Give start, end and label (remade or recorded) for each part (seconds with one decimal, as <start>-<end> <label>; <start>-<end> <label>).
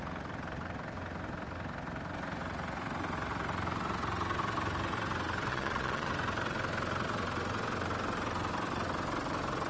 0.0-5.5 recorded; 5.5-6.1 remade; 6.1-9.7 recorded